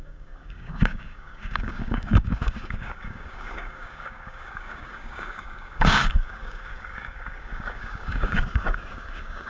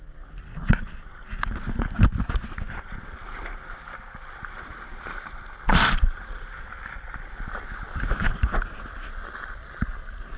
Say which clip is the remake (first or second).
first